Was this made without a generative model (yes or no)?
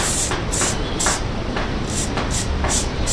no